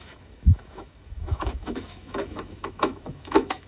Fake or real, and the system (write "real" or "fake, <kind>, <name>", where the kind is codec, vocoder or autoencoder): fake, autoencoder, DAC-VAE